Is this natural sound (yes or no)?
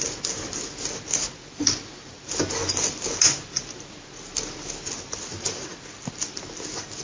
yes